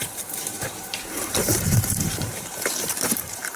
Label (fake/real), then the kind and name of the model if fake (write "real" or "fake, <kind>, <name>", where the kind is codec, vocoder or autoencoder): fake, vocoder, BigVGAN v2